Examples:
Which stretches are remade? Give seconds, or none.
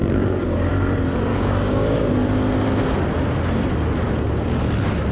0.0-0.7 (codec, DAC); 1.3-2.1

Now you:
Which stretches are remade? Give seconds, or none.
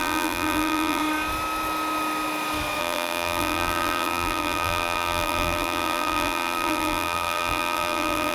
0.0-1.0 (vocoder, BigVGAN v2); 2.8-8.3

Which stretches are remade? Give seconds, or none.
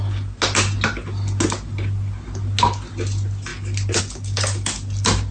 none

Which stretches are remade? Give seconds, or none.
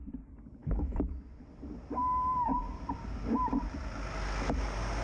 0.6-1.1 (autoencoder, DAC-VAE)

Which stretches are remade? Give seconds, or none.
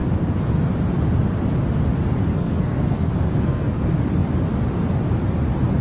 2.3-3.8 (codec, SNAC)